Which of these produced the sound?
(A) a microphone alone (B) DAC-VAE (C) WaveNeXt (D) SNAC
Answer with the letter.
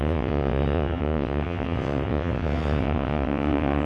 C